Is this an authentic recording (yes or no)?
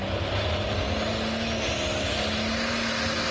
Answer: yes